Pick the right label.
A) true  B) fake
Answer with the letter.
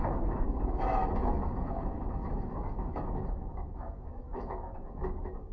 B